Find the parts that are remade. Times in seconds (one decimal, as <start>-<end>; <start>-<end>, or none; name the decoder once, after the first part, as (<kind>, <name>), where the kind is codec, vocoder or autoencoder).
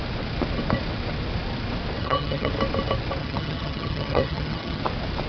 2.0-2.5 (vocoder, HiFi-GAN); 3.2-4.8